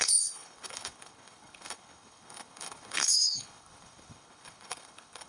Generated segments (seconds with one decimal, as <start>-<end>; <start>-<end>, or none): 0.0-5.3